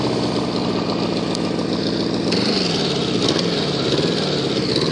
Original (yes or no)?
yes